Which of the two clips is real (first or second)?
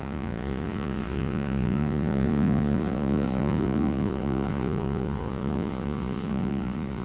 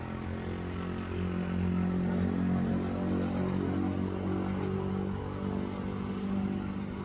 second